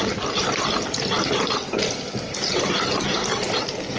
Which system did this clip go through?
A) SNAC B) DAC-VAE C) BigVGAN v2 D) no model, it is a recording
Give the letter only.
D